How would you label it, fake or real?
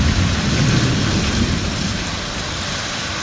real